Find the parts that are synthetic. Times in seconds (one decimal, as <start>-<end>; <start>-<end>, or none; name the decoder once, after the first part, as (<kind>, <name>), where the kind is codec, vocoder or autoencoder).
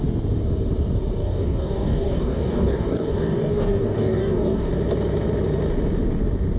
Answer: 1.2-4.7 (codec, DAC)